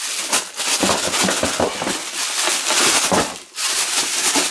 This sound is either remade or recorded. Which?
recorded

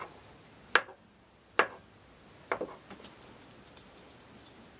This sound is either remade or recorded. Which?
recorded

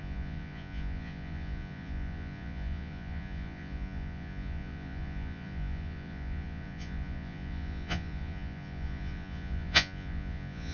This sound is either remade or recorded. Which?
remade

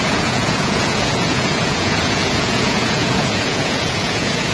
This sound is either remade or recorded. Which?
remade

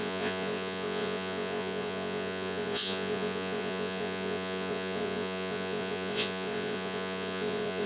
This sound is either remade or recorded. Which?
remade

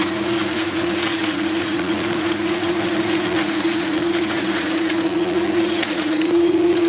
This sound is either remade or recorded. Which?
remade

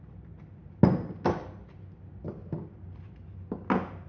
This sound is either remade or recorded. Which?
recorded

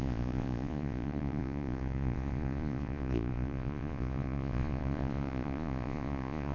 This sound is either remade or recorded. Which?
remade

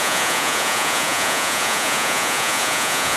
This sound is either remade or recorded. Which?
remade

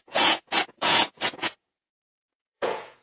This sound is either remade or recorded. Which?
remade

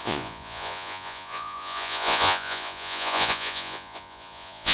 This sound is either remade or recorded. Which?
remade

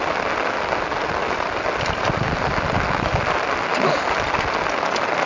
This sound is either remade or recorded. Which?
recorded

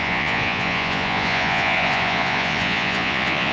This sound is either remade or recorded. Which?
remade